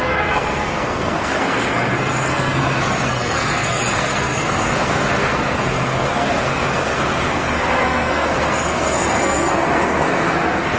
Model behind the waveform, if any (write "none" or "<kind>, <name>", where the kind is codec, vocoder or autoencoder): codec, SNAC